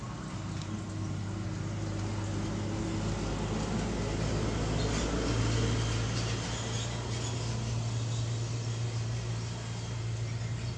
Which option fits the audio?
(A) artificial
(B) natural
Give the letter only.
B